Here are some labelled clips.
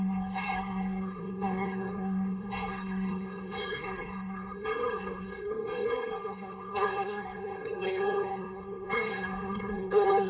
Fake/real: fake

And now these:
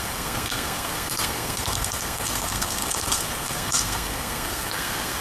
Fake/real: fake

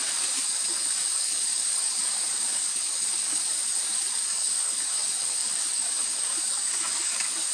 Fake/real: fake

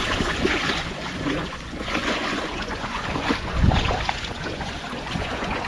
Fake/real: fake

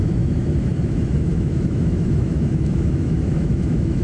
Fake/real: fake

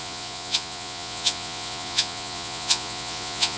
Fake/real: fake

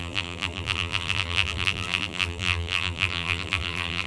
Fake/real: fake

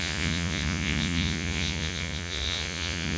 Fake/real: fake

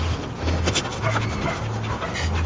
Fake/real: real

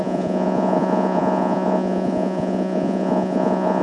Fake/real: fake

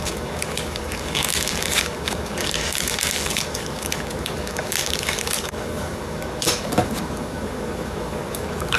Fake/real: fake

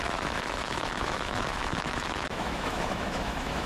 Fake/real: fake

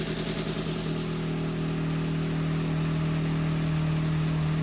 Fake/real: real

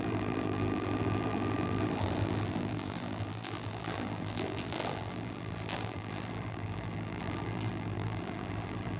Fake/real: fake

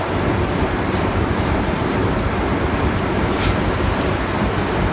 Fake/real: fake